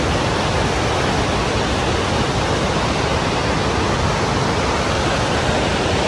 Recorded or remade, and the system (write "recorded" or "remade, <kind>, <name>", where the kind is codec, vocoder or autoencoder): recorded